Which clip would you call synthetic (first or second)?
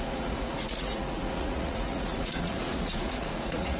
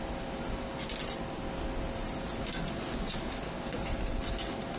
first